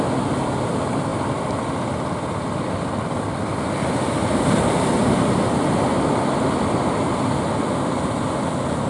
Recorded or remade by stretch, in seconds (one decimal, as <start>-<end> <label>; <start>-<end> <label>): 0.0-8.9 recorded